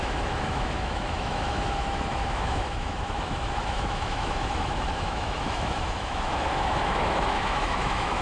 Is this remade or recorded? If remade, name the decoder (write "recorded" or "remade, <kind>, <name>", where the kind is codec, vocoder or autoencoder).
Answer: remade, autoencoder, DAC-VAE